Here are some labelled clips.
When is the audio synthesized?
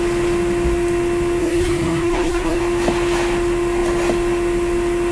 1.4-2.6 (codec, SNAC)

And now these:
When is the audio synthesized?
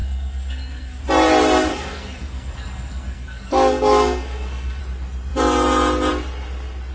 0.0-1.0 (codec, SNAC); 1.7-4.8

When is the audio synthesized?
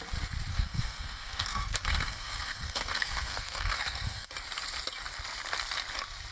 0.5-4.3 (codec, SNAC)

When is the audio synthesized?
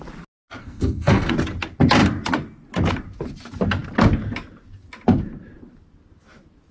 0.6-1.3 (codec, SNAC)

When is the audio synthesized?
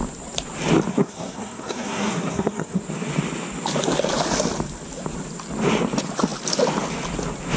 0.9-2.8 (codec, SNAC)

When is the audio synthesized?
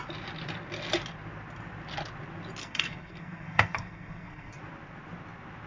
2.6-4.6 (codec, SNAC)